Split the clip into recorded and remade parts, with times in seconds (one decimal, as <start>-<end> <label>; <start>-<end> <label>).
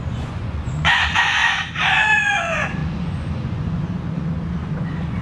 0.0-1.4 remade; 1.4-1.9 recorded; 1.9-5.2 remade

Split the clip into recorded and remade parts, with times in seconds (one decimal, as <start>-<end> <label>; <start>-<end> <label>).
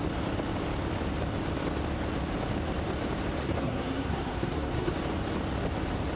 0.0-3.4 recorded; 3.4-4.9 remade; 4.9-6.2 recorded